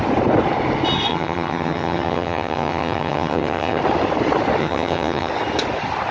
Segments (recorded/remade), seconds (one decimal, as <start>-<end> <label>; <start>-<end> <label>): 0.0-1.1 recorded; 1.1-3.8 remade; 3.8-4.6 recorded; 4.6-5.3 remade; 5.3-6.1 recorded